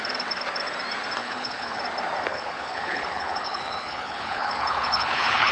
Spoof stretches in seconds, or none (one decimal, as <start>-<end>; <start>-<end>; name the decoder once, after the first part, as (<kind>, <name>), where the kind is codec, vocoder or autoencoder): 1.2-1.8 (codec, HILCodec); 2.3-5.5